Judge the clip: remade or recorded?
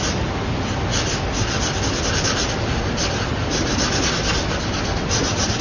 recorded